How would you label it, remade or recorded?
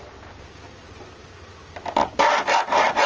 recorded